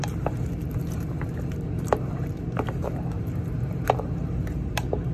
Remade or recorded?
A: remade